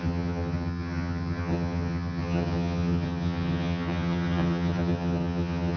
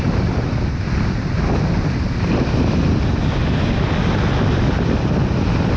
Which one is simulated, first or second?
first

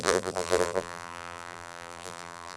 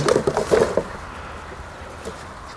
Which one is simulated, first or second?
first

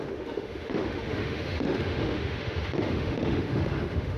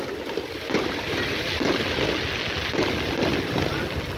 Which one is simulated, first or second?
first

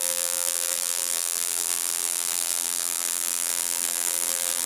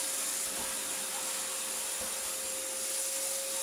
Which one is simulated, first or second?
first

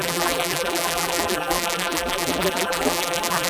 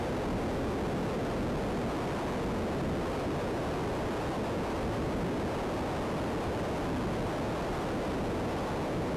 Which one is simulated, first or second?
first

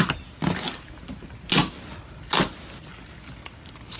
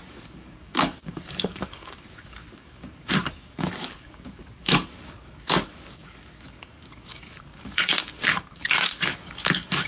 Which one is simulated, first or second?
second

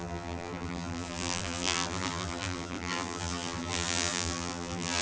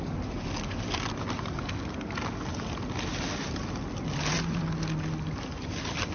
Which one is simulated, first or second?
first